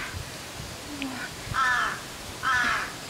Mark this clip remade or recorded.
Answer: recorded